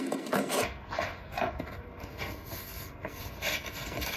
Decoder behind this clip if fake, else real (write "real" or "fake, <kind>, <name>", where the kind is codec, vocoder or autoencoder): fake, codec, SNAC